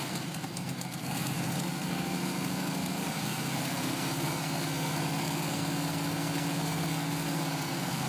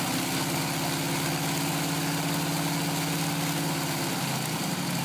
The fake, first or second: first